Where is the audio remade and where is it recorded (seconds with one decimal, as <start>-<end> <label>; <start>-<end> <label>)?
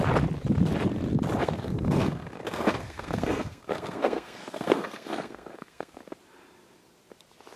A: 0.0-1.4 recorded; 1.4-6.0 remade; 6.0-7.6 recorded